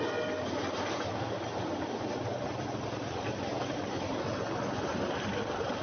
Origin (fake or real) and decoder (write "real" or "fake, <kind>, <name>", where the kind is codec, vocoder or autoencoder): real